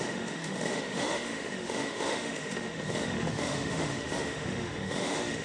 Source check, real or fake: fake